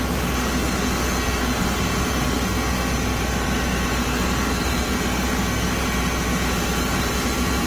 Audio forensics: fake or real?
real